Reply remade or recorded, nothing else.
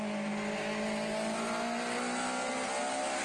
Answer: recorded